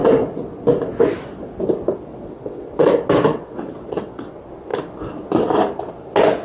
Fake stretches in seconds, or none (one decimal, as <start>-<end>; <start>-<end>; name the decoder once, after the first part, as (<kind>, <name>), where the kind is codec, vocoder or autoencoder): 2.1-2.9 (vocoder, WaveNeXt); 3.3-4.3